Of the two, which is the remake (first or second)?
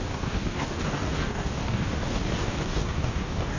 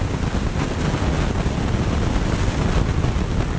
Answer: first